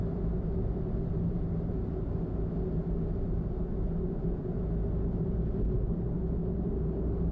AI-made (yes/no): no